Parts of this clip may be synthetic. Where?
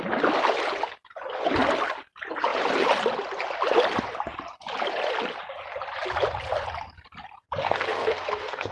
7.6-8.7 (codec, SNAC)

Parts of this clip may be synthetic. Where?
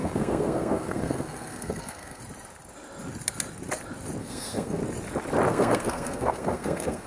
0.0-2.2 (codec, SNAC); 4.2-4.8; 5.5-7.1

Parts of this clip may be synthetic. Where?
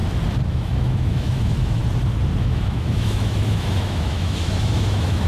0.5-1.8 (autoencoder, DAC-VAE); 2.4-5.3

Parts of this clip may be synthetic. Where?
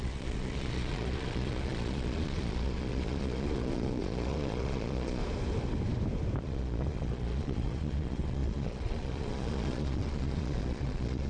0.0-5.2 (vocoder, Vocos); 6.4-11.3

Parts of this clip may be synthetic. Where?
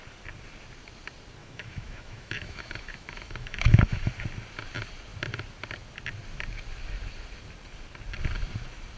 1.4-4.1 (autoencoder, DAC-VAE)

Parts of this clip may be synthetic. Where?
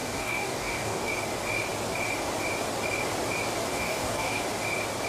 0.0-1.1 (codec, DAC); 3.7-4.4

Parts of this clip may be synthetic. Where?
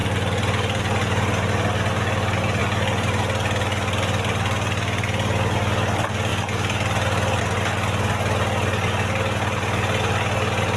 none